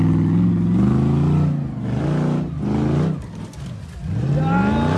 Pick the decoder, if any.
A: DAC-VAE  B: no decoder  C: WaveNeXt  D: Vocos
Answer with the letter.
B